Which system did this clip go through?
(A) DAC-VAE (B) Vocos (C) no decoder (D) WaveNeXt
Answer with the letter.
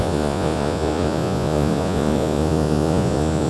B